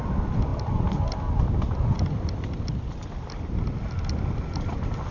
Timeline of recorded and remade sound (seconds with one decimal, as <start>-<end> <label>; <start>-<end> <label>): 0.0-5.1 recorded